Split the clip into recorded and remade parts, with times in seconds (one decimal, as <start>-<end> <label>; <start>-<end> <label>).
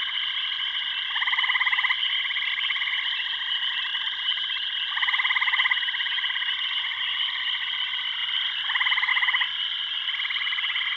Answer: 0.0-11.0 recorded